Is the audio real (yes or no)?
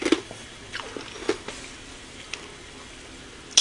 yes